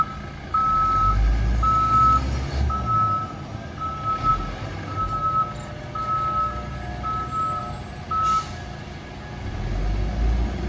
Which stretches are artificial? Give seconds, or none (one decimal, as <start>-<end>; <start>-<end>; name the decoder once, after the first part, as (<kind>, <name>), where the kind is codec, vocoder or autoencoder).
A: none